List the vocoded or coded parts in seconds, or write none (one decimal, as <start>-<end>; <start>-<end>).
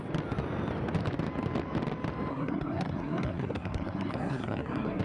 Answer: 2.3-5.0